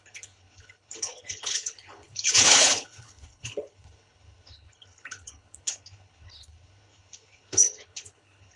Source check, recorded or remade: remade